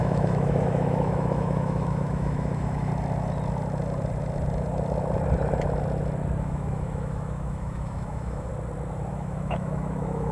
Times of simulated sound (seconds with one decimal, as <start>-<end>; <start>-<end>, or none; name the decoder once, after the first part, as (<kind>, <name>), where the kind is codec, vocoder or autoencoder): 0.0-2.9 (autoencoder, DAC-VAE); 6.4-8.5; 9.1-10.3

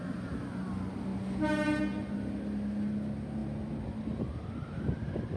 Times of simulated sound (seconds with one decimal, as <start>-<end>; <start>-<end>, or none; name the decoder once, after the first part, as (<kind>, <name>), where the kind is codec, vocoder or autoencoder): none

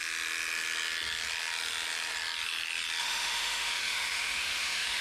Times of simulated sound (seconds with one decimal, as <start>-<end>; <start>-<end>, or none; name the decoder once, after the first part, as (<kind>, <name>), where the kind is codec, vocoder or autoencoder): 3.0-5.0 (autoencoder, DAC-VAE)